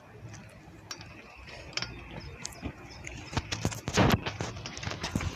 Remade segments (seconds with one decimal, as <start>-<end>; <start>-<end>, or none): none